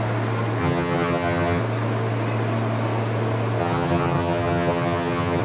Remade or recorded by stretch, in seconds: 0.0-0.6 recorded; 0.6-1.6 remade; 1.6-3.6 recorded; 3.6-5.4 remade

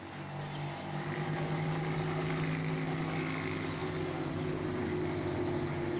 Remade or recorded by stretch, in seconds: 0.0-6.0 recorded

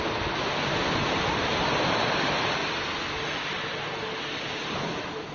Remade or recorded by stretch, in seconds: 0.0-2.6 remade; 2.6-4.8 recorded; 4.8-5.3 remade

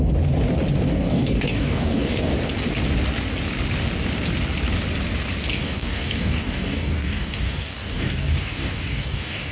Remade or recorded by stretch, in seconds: 0.0-0.9 recorded; 0.9-2.3 remade; 2.3-5.5 recorded; 5.5-9.5 remade

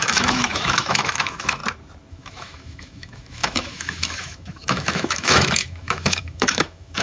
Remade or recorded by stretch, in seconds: 0.0-1.6 remade; 1.6-2.1 recorded; 2.1-7.0 remade

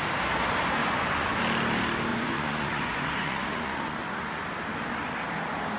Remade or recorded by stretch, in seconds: 0.0-0.8 recorded; 0.8-1.4 remade; 1.4-2.1 recorded; 2.1-4.4 remade; 4.4-5.8 recorded